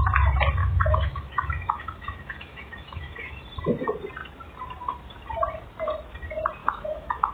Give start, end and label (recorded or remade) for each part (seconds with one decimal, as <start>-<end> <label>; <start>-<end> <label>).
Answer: 0.0-0.6 recorded; 0.6-3.4 remade; 3.4-6.6 recorded; 6.6-7.3 remade